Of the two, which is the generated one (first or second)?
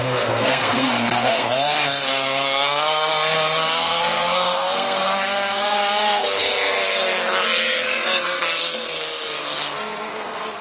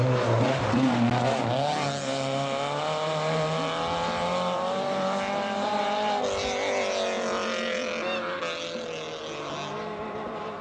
first